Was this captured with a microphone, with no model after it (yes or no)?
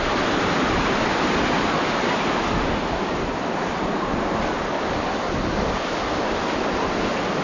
yes